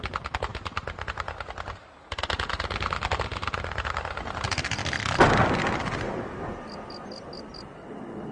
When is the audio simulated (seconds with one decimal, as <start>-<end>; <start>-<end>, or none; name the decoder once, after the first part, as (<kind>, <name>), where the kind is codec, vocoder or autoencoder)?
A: none